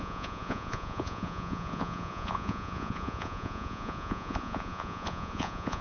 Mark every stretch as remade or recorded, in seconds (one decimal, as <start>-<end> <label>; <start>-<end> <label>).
0.0-5.8 remade